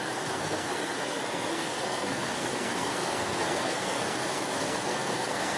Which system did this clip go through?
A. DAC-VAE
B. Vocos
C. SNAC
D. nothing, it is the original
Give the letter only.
C